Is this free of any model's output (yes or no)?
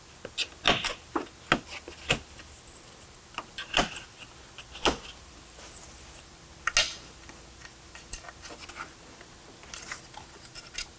yes